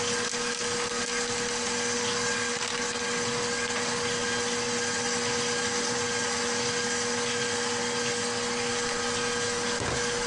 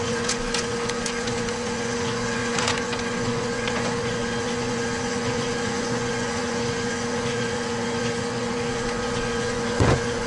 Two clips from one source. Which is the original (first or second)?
first